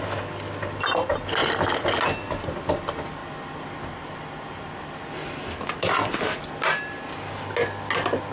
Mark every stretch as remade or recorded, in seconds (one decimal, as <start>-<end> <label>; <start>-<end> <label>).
0.0-8.3 recorded

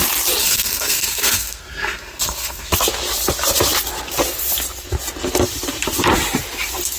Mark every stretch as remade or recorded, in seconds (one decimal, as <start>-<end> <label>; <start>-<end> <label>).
0.0-0.4 recorded; 0.4-2.7 remade; 2.7-7.0 recorded

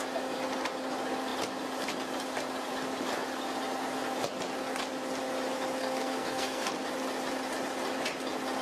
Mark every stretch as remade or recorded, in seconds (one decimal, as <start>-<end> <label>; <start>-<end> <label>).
0.0-5.8 recorded; 5.8-6.7 remade; 6.7-8.6 recorded

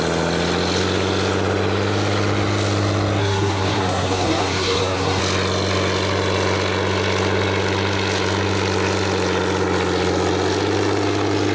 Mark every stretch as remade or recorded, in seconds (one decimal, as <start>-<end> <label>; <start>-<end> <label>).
0.0-3.2 recorded; 3.2-5.2 remade; 5.2-11.5 recorded

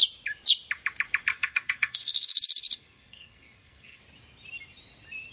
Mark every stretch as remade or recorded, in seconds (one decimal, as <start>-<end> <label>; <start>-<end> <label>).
0.0-1.3 recorded; 1.3-4.0 remade; 4.0-5.3 recorded

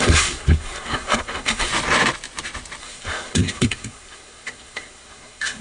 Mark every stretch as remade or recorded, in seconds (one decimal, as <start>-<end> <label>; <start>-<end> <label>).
0.0-1.7 remade; 1.7-2.8 recorded; 2.8-5.6 remade